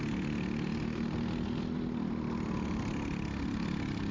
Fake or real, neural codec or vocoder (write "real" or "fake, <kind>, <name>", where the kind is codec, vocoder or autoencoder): real